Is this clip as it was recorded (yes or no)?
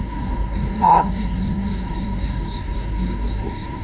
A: no